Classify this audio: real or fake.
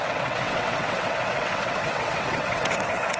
fake